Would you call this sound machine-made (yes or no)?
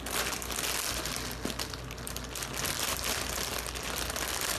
no